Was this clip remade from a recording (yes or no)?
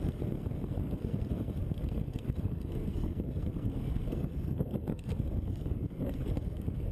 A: yes